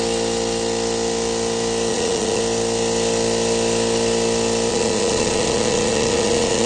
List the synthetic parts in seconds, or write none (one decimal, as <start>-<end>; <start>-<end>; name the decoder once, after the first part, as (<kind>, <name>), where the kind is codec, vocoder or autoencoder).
1.9-2.4 (vocoder, Vocos); 4.7-6.7